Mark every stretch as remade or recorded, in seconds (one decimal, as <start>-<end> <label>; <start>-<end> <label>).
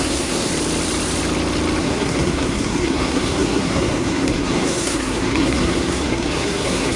0.0-0.5 remade; 0.5-1.8 recorded; 1.8-7.0 remade